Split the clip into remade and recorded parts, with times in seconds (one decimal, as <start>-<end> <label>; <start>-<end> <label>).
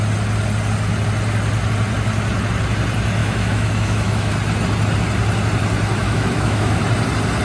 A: 0.0-3.2 recorded; 3.2-4.3 remade; 4.3-6.0 recorded; 6.0-6.8 remade; 6.8-7.4 recorded